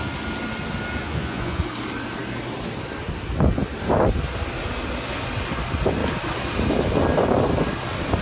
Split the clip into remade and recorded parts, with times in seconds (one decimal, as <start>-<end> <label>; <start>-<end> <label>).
0.0-1.0 recorded; 1.0-1.6 remade; 1.6-8.2 recorded